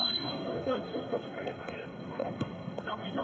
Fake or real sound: fake